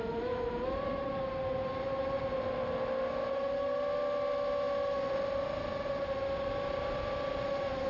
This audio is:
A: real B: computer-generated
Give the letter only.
A